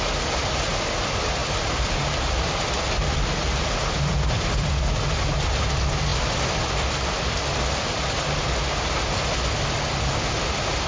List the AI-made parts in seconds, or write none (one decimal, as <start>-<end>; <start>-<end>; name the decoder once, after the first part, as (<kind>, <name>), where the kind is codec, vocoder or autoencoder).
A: 1.4-4.8 (vocoder, BigVGAN v2); 6.1-8.4

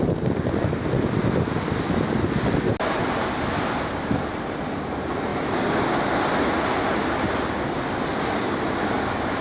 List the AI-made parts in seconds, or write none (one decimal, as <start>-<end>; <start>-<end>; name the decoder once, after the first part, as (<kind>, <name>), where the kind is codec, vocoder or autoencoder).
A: none

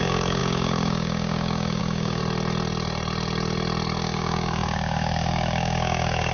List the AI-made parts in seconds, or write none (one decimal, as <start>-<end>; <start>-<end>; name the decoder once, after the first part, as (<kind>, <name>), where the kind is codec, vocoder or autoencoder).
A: 0.0-2.2 (codec, DAC); 4.0-6.3

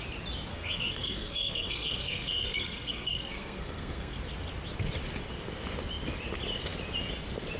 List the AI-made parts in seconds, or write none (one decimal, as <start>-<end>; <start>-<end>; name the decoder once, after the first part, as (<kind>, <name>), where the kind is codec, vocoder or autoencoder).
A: 0.5-4.2 (codec, SNAC)

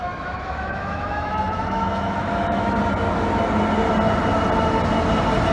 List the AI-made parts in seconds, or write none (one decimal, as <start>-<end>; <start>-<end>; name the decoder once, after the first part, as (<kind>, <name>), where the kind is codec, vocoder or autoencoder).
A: 0.0-2.8 (autoencoder, DAC-VAE)

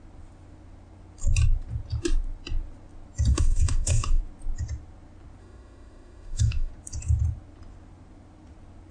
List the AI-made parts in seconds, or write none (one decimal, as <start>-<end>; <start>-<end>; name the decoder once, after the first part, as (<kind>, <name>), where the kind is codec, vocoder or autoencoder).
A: 3.3-4.2 (autoencoder, DAC-VAE); 5.4-6.7

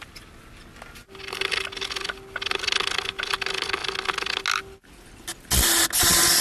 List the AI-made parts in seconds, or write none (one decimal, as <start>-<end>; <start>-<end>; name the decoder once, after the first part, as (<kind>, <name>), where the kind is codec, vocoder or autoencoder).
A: none

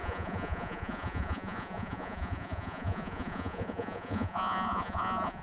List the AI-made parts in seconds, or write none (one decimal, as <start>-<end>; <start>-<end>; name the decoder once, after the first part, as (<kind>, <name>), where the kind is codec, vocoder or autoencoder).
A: 0.0-5.4 (vocoder, Vocos)